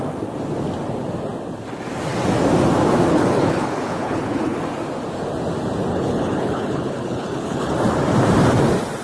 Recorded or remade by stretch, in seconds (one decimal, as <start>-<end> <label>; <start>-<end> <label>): 0.0-3.1 recorded; 3.1-4.6 remade; 4.6-5.9 recorded; 5.9-7.7 remade; 7.7-9.0 recorded